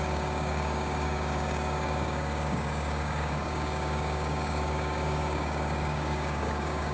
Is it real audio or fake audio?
fake